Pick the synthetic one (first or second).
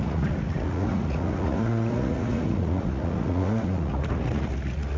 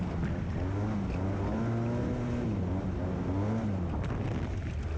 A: first